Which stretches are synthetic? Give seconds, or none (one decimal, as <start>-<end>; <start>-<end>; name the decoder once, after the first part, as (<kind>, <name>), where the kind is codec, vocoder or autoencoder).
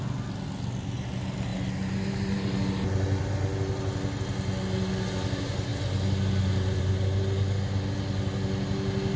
none